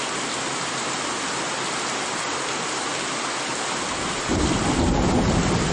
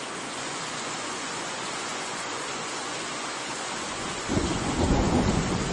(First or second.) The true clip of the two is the first